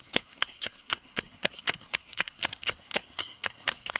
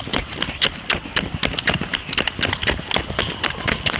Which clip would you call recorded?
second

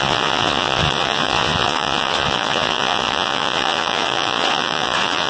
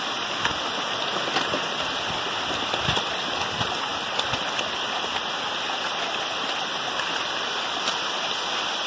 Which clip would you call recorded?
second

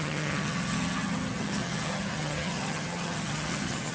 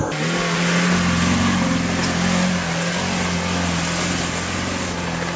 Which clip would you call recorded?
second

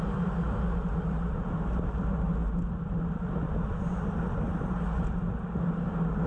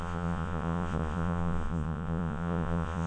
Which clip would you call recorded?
first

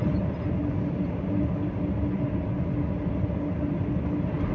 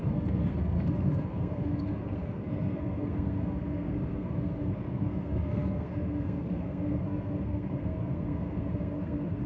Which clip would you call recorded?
first